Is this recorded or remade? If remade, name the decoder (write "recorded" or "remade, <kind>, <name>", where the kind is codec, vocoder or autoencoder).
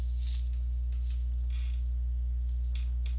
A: recorded